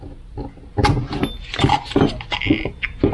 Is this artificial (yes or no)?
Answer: no